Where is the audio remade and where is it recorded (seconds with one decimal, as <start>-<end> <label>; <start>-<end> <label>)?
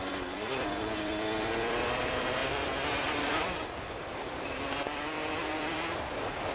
0.0-6.5 remade